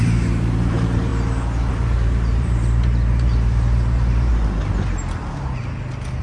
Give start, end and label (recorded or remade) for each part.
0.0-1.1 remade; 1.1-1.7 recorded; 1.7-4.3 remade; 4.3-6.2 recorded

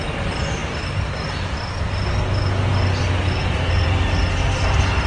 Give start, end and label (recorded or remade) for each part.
0.0-0.6 recorded; 0.6-1.6 remade; 1.6-3.4 recorded; 3.4-5.1 remade

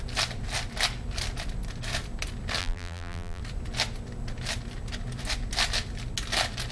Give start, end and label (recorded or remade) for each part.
0.0-2.6 recorded; 2.6-3.4 remade; 3.4-6.7 recorded

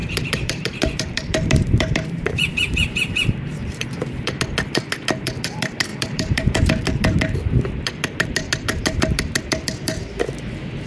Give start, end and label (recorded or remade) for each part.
0.0-4.4 remade; 4.4-5.9 recorded; 5.9-6.7 remade; 6.7-10.9 recorded

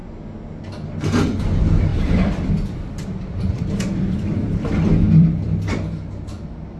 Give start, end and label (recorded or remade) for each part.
0.0-1.0 recorded; 1.0-6.8 remade

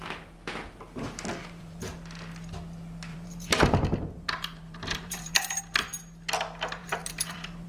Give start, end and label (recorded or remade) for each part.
0.0-1.3 recorded; 1.3-1.8 remade; 1.8-3.1 recorded; 3.1-5.6 remade; 5.6-6.8 recorded; 6.8-7.7 remade

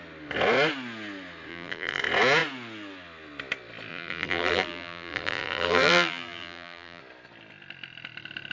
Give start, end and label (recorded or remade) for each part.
0.0-1.5 recorded; 1.5-2.0 remade; 2.0-3.9 recorded; 3.9-7.0 remade; 7.0-8.5 recorded

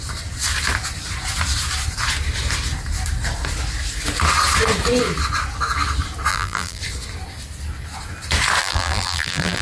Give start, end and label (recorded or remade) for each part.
0.0-6.3 recorded; 6.3-6.8 remade; 6.8-8.6 recorded; 8.6-9.6 remade